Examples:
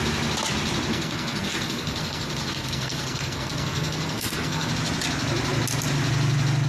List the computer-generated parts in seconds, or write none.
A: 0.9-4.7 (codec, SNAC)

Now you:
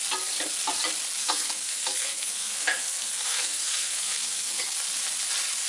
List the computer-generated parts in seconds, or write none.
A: 1.2-4.6 (codec, SNAC)